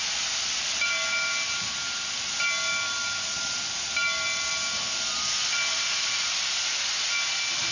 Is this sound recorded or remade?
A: recorded